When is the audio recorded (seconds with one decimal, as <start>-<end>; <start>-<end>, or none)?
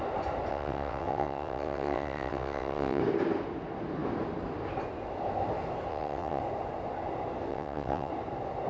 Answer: 0.0-0.5; 3.0-5.9; 6.4-7.5; 8.1-8.7